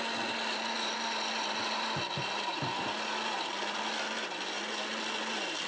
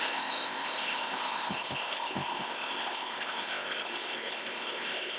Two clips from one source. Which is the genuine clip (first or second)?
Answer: first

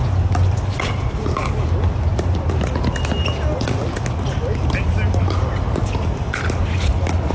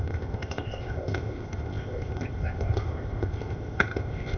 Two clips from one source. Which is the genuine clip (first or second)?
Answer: first